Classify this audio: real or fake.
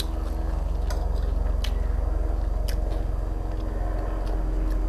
real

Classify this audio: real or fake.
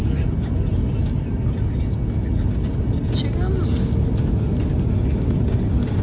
real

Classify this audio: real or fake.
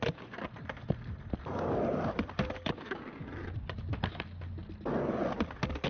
real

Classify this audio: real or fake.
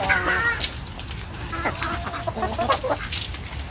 real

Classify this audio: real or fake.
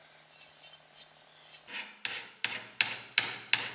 real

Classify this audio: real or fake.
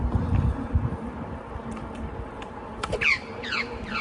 fake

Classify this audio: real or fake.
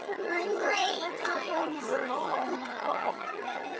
fake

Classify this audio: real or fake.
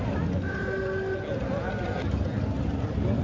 real